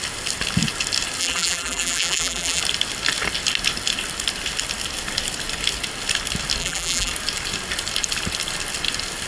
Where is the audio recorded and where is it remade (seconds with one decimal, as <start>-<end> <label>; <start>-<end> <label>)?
0.0-1.2 recorded; 1.2-2.6 remade; 2.6-6.6 recorded; 6.6-7.1 remade; 7.1-9.3 recorded